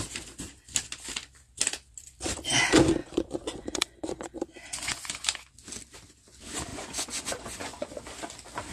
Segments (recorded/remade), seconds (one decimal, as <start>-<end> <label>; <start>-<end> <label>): 0.0-3.0 recorded; 3.0-5.2 remade; 5.2-6.7 recorded; 6.7-8.0 remade; 8.0-8.7 recorded